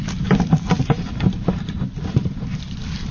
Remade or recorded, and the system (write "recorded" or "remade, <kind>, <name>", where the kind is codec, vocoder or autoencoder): remade, vocoder, BigVGAN v2